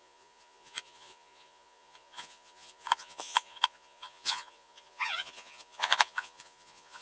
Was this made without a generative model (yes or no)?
no